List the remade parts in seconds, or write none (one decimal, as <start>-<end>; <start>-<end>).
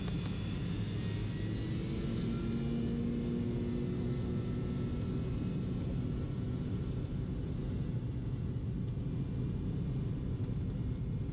none